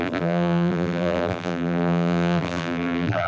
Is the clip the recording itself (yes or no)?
no